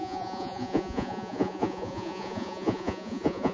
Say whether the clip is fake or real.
fake